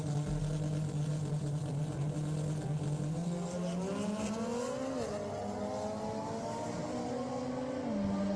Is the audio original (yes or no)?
yes